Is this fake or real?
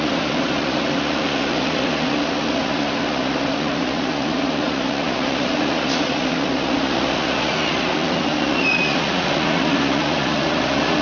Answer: fake